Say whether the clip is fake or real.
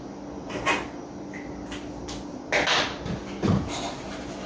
real